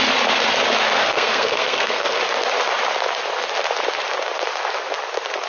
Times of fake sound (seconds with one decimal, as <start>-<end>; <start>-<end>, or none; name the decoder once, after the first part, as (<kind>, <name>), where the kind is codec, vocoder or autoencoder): 1.0-2.2 (codec, SNAC)